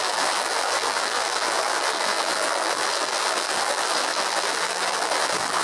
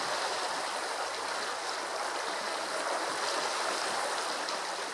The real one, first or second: second